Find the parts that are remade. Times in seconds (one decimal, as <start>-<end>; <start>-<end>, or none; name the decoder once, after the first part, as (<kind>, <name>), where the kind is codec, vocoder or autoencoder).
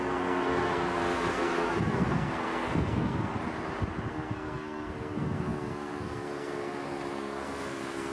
0.0-3.3 (codec, SNAC); 4.1-8.1